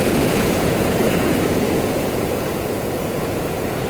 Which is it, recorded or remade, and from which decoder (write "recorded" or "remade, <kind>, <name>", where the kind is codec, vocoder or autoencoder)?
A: remade, vocoder, Vocos